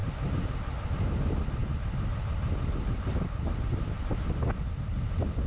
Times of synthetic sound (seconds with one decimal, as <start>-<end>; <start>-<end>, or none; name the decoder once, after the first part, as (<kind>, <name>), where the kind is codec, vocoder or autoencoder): none